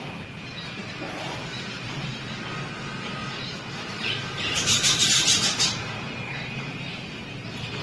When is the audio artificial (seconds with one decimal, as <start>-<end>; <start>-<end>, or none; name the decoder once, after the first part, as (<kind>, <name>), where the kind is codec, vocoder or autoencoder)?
0.8-2.1 (vocoder, BigVGAN v2); 3.2-7.2